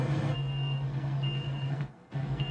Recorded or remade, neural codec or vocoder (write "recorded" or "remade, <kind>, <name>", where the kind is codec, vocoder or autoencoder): remade, codec, SNAC